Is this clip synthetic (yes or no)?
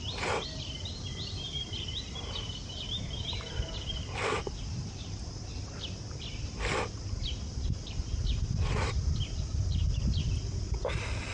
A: yes